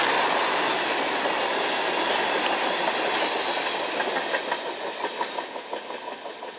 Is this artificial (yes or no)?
no